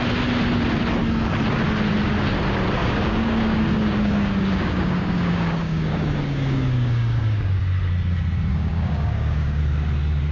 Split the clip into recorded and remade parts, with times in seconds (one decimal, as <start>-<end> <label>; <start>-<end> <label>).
0.0-2.8 recorded; 2.8-7.6 remade; 7.6-8.5 recorded; 8.5-9.6 remade; 9.6-10.3 recorded